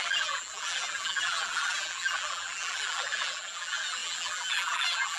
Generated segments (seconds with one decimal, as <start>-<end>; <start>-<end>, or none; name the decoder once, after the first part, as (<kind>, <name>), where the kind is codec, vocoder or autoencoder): 0.0-5.2 (vocoder, BigVGAN v2)